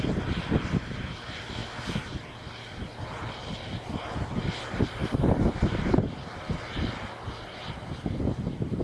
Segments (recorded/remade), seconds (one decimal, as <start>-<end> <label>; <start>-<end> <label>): 0.0-8.8 recorded